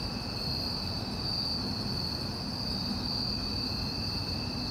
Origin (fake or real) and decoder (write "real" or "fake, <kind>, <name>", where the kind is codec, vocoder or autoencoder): real